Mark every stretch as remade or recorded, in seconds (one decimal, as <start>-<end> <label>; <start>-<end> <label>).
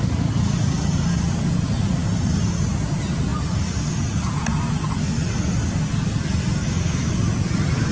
0.0-6.6 recorded; 6.6-7.1 remade; 7.1-7.9 recorded